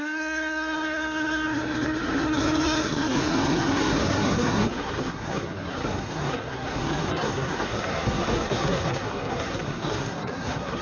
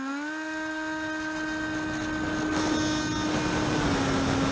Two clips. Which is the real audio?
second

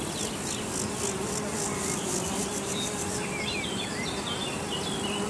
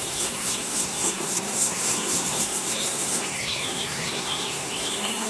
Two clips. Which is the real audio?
first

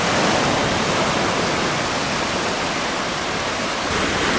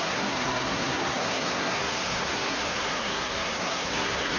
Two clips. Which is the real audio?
first